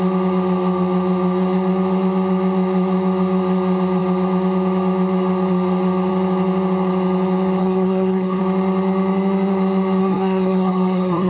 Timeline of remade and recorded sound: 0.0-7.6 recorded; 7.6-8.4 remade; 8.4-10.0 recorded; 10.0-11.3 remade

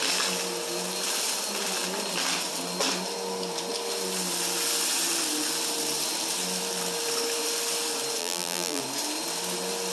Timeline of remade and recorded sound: 0.0-8.2 recorded; 8.2-8.8 remade; 8.8-9.9 recorded

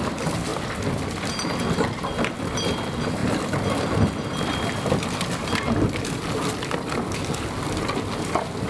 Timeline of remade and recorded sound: 0.0-8.7 recorded

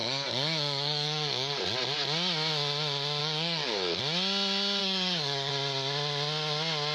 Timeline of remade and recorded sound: 0.0-1.6 remade; 1.6-3.2 recorded; 3.2-4.0 remade; 4.0-4.8 recorded; 4.8-5.5 remade; 5.5-6.9 recorded

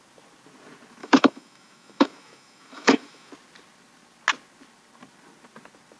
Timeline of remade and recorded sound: 0.0-1.0 recorded; 1.0-3.3 remade; 3.3-6.0 recorded

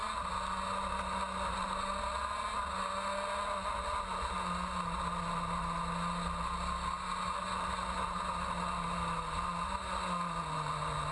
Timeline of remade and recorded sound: 0.0-11.1 recorded

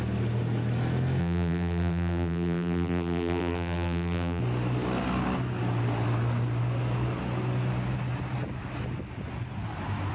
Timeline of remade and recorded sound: 0.0-1.2 recorded; 1.2-4.4 remade; 4.4-10.1 recorded